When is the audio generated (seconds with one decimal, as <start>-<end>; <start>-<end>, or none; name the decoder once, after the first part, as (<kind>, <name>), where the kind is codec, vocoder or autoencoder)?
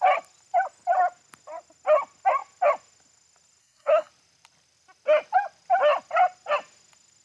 3.6-4.1 (codec, SNAC)